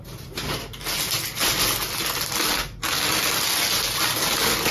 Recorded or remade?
recorded